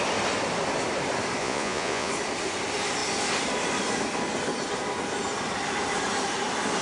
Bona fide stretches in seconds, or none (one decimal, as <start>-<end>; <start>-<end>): 0.0-1.4; 2.1-6.8

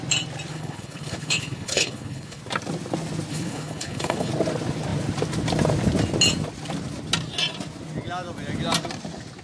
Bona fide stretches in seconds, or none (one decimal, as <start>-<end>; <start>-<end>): 0.0-0.5; 2.4-3.3; 4.3-9.4

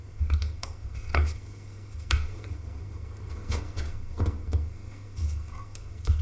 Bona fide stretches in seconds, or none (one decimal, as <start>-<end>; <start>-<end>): none

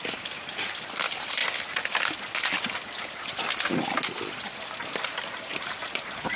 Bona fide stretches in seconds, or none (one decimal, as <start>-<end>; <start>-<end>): 1.4-5.2

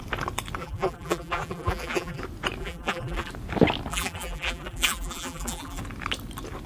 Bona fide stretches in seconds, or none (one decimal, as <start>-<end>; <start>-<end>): 0.0-0.6; 2.2-2.6; 3.3-3.9; 5.8-6.7

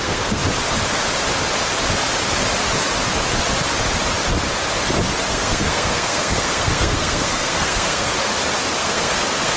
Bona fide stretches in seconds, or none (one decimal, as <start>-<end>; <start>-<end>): 0.4-5.3; 8.1-8.8

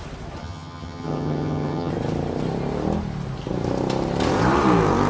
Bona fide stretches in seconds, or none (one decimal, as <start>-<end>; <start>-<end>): 0.0-0.4; 1.9-5.1

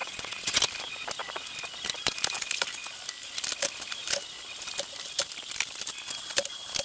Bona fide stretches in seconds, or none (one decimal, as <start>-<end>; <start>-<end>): 0.6-6.8